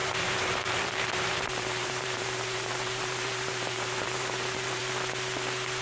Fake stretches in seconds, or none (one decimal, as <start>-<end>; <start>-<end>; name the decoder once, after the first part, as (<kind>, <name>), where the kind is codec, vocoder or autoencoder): 0.0-4.8 (vocoder, BigVGAN v2)